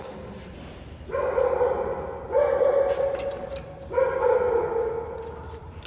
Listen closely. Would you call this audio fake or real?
real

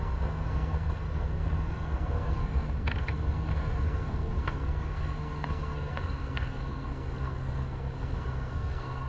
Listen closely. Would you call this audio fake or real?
fake